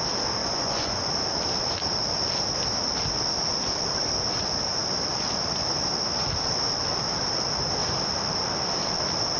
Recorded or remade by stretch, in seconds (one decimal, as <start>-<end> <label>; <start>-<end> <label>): 0.0-0.4 recorded; 0.4-1.1 remade; 1.1-9.4 recorded

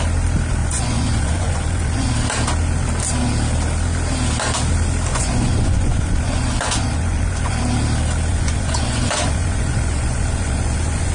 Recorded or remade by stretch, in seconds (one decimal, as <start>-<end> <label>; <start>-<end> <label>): 0.0-0.6 recorded; 0.6-2.1 remade; 2.1-5.1 recorded; 5.1-7.6 remade; 7.6-8.3 recorded; 8.3-11.1 remade

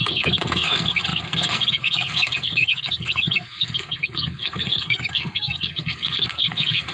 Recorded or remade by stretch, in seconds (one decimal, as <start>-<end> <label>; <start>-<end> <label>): 0.0-6.9 remade

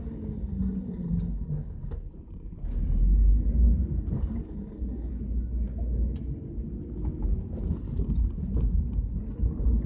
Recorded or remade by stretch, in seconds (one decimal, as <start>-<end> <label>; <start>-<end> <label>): 0.0-9.9 recorded

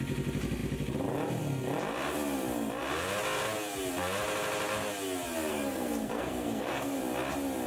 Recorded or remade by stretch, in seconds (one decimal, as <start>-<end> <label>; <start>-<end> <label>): 0.0-5.5 recorded; 5.5-7.0 remade; 7.0-7.7 recorded

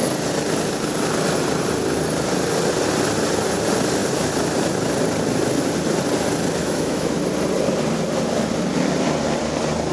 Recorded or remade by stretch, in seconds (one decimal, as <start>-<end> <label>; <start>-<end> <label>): 0.0-6.6 recorded; 6.6-7.2 remade; 7.2-9.9 recorded

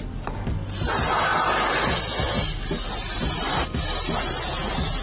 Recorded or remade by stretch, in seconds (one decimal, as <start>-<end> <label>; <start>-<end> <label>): 0.0-1.3 recorded; 1.3-2.0 remade; 2.0-5.0 recorded